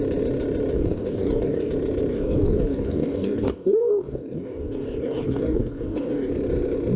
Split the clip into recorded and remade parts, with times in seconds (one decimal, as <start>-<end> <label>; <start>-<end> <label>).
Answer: 0.0-0.7 recorded; 0.7-1.7 remade; 1.7-2.1 recorded; 2.1-6.3 remade; 6.3-7.0 recorded